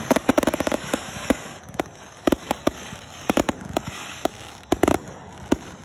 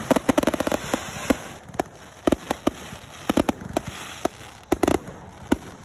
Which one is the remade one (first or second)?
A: first